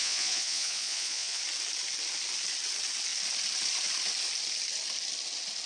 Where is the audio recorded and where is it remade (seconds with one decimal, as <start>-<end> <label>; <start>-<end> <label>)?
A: 0.0-1.4 remade; 1.4-5.7 recorded